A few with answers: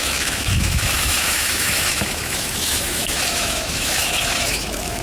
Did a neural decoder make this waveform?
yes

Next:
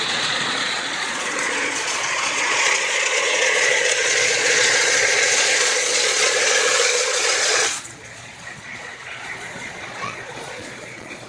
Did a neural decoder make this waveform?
yes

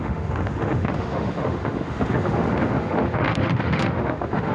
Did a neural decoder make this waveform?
yes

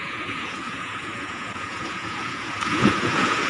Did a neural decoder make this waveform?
yes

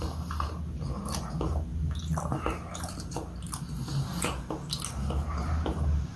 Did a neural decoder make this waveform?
no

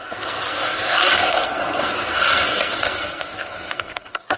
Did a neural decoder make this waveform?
yes